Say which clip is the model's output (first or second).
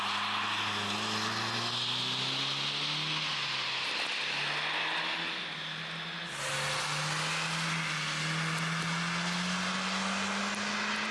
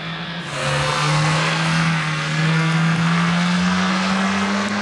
second